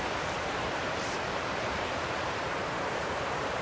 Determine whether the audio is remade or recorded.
remade